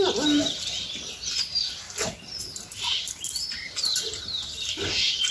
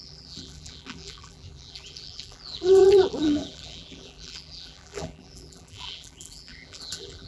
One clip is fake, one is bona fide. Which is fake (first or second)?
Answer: second